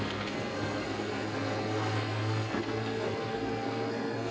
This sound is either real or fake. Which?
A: fake